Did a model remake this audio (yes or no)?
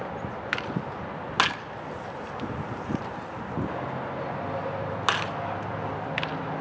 no